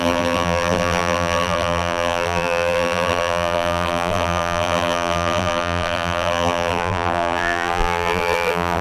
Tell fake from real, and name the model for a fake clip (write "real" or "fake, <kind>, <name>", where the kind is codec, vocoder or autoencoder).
fake, vocoder, BigVGAN v2